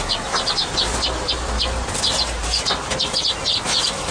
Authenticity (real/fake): real